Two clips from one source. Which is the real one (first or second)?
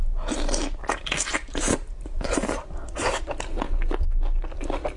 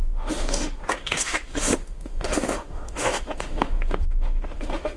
first